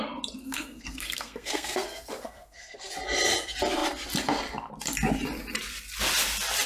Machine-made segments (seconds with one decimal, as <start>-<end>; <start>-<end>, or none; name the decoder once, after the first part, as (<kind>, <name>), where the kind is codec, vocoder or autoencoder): 0.4-2.9 (codec, SNAC)